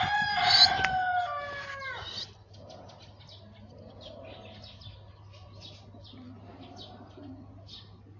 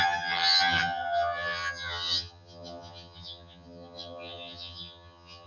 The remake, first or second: second